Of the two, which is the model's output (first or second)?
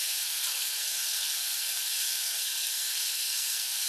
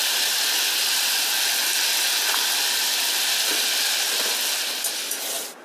first